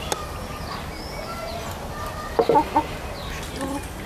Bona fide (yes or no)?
yes